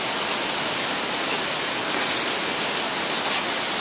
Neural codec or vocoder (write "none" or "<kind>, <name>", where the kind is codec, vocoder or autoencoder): none